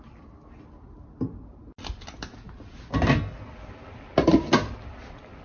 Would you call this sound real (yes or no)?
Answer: yes